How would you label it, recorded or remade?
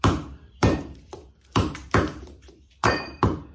remade